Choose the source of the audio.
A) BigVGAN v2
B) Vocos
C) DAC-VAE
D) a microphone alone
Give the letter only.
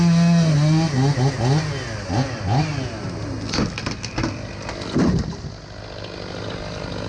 D